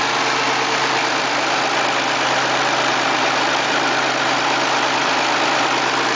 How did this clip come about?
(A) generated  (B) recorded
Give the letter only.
B